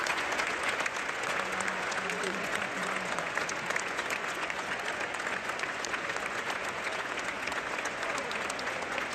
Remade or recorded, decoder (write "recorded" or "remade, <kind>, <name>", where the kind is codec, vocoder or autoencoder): remade, vocoder, Vocos